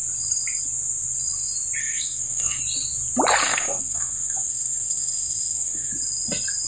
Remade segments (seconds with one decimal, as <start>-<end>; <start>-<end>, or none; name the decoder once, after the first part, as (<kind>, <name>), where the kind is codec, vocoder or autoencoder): 1.8-2.6 (codec, SNAC); 3.4-5.9